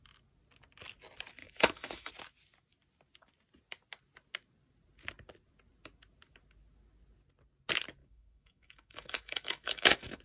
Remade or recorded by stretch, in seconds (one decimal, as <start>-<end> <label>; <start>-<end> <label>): 0.0-1.4 recorded; 1.4-2.1 remade; 2.1-8.0 recorded; 8.0-10.2 remade